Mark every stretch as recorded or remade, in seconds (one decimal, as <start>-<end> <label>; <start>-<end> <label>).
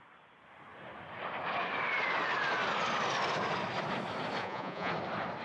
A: 0.0-4.4 recorded; 4.4-4.9 remade; 4.9-5.4 recorded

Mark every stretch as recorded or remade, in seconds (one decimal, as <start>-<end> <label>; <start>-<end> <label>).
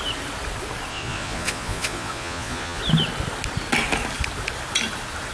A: 0.0-0.9 recorded; 0.9-2.8 remade; 2.8-5.3 recorded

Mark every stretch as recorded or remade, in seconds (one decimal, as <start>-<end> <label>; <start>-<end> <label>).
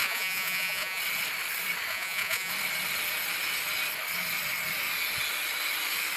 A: 0.0-1.0 remade; 1.0-1.9 recorded; 1.9-2.5 remade; 2.5-6.2 recorded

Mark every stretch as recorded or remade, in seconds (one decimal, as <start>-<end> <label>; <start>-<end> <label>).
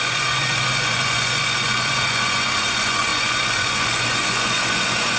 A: 0.0-5.2 remade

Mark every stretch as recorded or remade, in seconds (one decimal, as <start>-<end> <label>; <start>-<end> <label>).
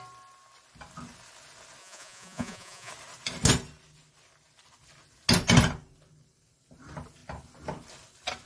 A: 0.0-1.8 recorded; 1.8-2.9 remade; 2.9-8.5 recorded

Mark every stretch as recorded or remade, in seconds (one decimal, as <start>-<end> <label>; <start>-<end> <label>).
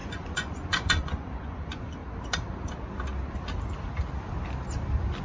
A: 0.0-2.0 remade; 2.0-5.2 recorded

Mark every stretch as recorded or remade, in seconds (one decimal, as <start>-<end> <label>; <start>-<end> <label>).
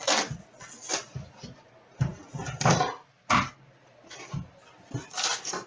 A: 0.0-5.7 recorded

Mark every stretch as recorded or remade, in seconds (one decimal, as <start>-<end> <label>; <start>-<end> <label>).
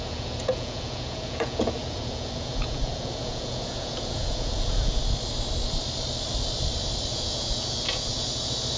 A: 0.0-5.0 remade; 5.0-7.1 recorded; 7.1-8.8 remade